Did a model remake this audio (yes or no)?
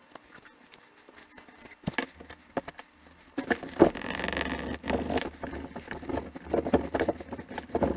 no